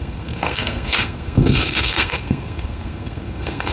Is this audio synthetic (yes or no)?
yes